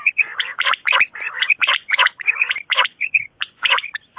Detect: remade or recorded remade